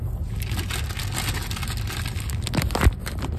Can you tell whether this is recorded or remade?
recorded